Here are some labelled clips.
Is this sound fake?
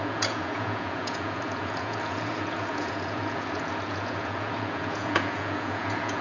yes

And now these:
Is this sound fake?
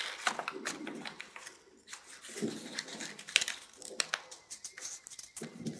no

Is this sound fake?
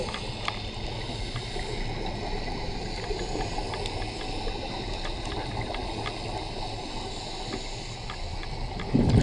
no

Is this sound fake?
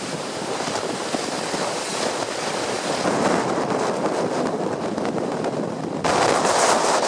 no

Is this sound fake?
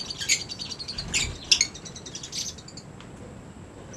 no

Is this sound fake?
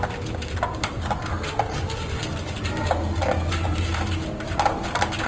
no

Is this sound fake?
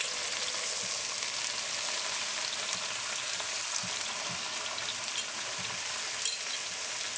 no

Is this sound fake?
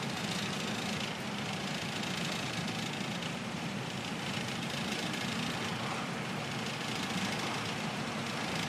yes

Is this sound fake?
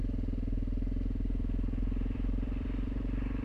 yes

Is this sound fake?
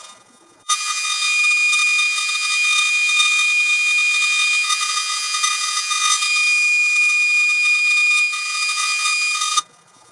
yes